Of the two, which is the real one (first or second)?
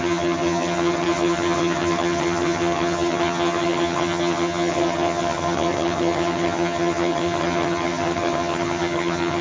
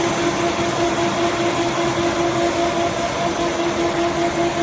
second